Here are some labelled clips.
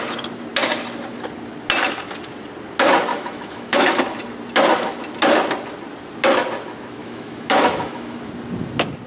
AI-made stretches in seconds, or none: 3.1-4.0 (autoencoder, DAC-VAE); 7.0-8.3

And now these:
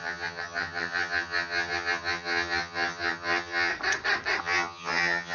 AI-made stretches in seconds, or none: 0.0-3.7 (vocoder, HiFi-GAN); 4.4-5.3

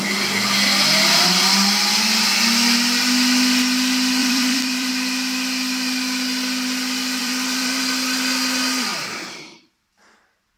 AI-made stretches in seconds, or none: 4.2-4.9 (vocoder, BigVGAN v2); 7.2-7.8; 8.9-9.7

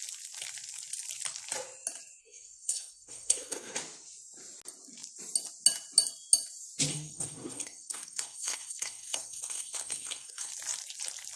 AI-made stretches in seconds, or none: 2.2-3.8 (codec, SNAC); 6.9-10.5

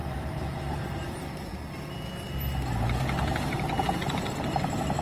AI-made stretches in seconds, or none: 0.0-0.9 (vocoder, BigVGAN v2)

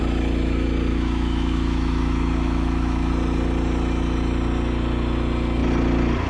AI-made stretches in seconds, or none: 0.9-3.1 (autoencoder, DAC-VAE)

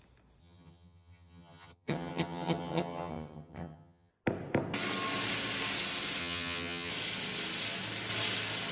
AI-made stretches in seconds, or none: 0.4-4.1 (vocoder, HiFi-GAN); 6.2-6.9